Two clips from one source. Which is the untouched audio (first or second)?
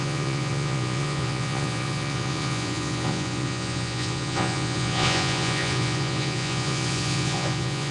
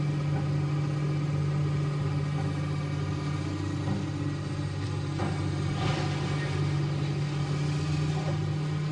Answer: second